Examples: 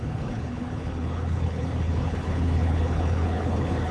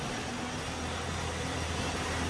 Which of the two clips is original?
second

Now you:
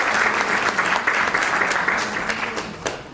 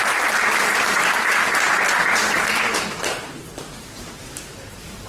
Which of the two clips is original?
first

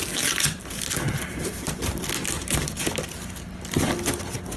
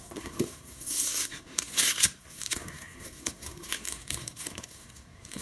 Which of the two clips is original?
first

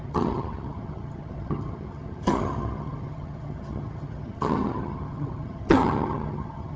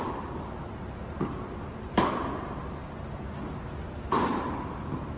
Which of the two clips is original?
second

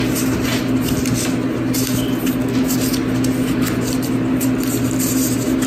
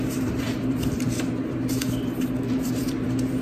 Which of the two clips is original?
first